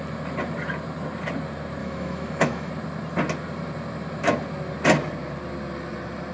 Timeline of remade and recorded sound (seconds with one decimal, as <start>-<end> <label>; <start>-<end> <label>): 0.0-1.8 recorded; 1.8-2.7 remade; 2.7-6.3 recorded